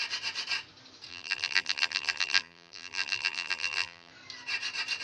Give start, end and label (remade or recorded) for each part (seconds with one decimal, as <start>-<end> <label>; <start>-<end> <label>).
0.0-1.1 recorded; 1.1-4.1 remade; 4.1-5.0 recorded